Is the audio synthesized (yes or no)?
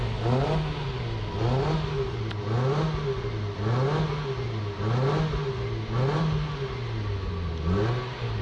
no